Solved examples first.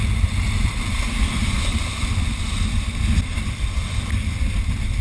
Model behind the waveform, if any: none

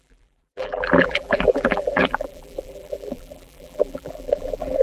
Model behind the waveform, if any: vocoder, BigVGAN v2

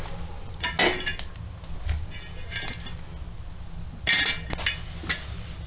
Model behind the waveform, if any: none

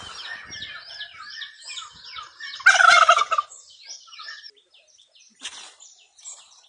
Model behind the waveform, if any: none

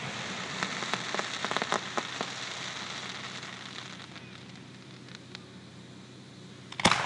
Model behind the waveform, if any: none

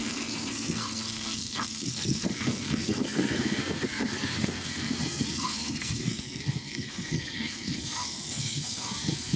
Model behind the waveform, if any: codec, SNAC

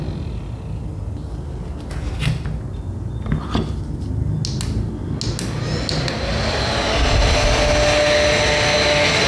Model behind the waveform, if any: none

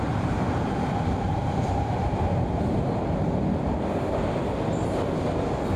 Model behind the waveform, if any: none